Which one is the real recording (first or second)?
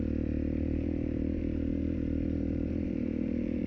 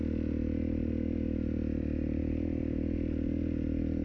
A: second